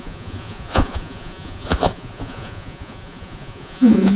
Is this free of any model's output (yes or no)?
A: no